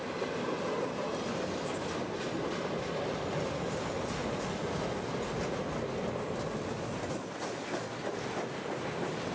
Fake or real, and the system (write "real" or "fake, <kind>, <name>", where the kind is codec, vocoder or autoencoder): real